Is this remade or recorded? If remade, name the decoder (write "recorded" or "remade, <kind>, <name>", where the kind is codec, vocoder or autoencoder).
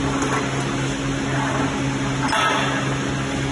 recorded